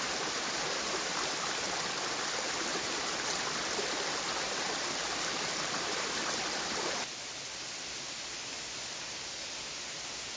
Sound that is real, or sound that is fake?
real